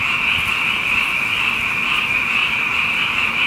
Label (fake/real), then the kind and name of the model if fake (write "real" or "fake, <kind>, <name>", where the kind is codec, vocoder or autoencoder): real